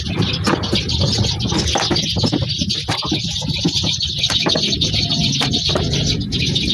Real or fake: real